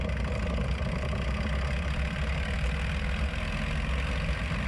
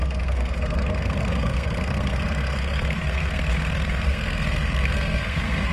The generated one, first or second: second